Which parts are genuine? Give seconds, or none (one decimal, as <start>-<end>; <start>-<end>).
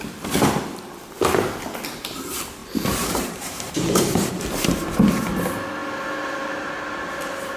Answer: 0.0-2.6; 4.3-7.6